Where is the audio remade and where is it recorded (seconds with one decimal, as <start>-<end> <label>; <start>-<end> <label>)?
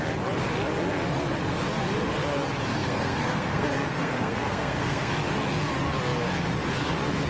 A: 0.0-2.8 recorded; 2.8-5.1 remade; 5.1-7.3 recorded